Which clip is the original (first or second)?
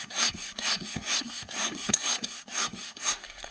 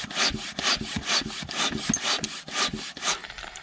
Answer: second